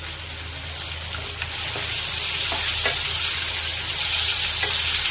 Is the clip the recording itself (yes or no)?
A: yes